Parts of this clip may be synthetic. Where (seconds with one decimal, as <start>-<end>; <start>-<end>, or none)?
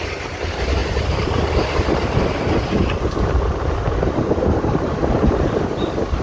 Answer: none